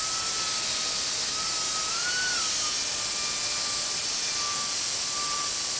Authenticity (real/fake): real